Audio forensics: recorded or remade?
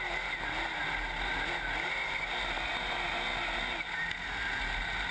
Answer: recorded